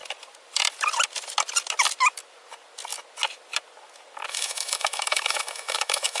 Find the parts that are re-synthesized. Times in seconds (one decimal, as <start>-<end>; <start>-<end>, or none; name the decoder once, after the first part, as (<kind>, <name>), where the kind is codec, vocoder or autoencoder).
4.3-6.2 (autoencoder, DAC-VAE)